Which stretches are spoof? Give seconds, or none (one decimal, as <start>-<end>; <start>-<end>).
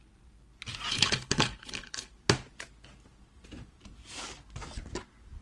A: 0.9-2.1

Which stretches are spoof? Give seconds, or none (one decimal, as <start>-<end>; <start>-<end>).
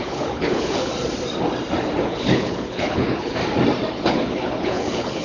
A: 0.0-0.9; 2.0-3.4; 3.9-5.2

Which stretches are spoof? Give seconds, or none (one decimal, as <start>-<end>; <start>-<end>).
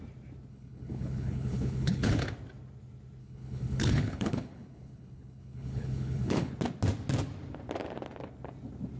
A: 0.5-2.1; 3.2-6.5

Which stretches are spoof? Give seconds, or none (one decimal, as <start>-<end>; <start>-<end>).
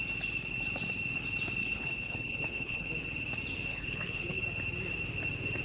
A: 1.6-2.9; 3.7-4.4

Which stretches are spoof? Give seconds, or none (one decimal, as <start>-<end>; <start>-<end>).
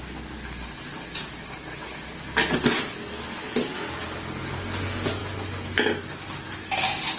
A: none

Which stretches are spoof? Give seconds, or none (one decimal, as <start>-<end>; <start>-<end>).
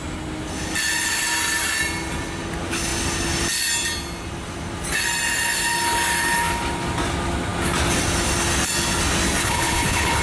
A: 9.4-10.2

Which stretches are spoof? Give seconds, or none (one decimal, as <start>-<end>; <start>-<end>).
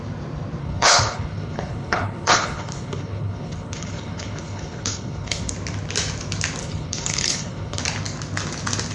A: 0.6-5.5; 6.6-7.8